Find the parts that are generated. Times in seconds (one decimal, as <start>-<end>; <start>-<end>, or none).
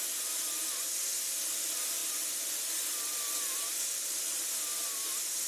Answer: none